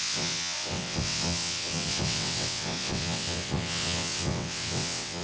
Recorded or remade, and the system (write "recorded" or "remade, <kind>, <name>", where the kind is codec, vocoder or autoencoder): remade, vocoder, WaveNeXt